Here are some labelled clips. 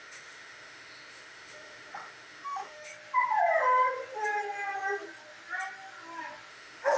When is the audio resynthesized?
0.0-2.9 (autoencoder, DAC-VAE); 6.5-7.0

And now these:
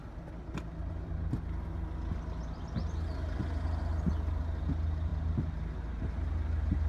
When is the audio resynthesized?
none